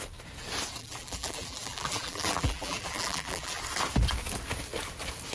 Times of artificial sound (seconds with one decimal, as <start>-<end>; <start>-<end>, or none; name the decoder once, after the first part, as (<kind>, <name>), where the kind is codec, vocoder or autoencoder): 0.8-3.6 (vocoder, BigVGAN v2)

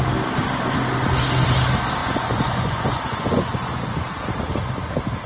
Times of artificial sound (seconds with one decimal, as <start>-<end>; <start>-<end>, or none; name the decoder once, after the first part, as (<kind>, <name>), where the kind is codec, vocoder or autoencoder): 2.0-4.0 (vocoder, Vocos)

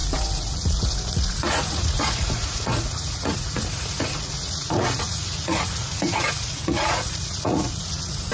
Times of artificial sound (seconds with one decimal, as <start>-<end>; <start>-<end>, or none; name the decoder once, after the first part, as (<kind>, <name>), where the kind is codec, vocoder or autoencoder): 0.0-8.3 (vocoder, Vocos)

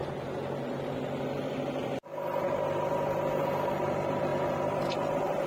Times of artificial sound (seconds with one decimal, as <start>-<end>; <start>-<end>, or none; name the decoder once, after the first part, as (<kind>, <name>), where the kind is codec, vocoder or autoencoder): 4.3-5.5 (vocoder, BigVGAN v2)